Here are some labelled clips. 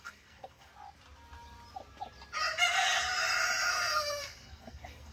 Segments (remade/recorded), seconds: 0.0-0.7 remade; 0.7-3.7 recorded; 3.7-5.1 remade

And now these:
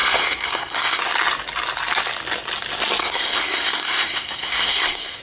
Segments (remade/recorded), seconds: 0.0-1.0 remade; 1.0-3.0 recorded; 3.0-5.2 remade